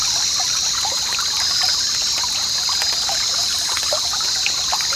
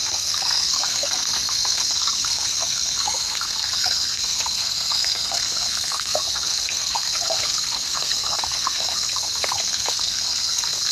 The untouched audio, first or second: first